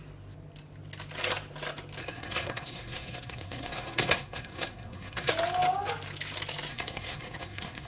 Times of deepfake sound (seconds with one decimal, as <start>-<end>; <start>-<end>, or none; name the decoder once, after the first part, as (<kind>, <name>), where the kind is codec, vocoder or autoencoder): 2.0-5.3 (codec, SNAC); 6.7-7.9